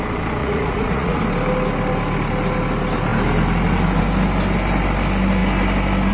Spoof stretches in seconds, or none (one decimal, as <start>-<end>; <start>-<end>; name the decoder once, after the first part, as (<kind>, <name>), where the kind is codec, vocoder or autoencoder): 0.4-1.2 (vocoder, Vocos)